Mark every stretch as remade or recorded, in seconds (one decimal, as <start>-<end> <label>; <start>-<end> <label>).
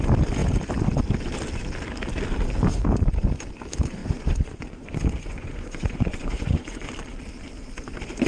0.0-4.0 recorded; 4.0-6.9 remade; 6.9-8.3 recorded